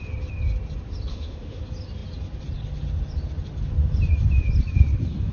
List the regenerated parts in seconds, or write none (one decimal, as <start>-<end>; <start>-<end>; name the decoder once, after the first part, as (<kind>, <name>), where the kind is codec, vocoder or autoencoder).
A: 1.1-1.6 (autoencoder, DAC-VAE)